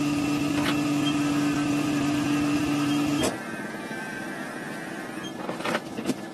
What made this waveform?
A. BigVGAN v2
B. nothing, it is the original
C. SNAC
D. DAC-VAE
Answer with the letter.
B